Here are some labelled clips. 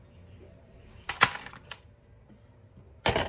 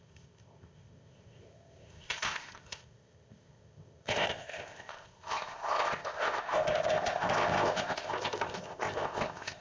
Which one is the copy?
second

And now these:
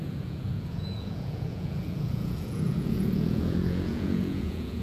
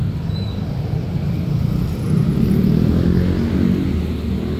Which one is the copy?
first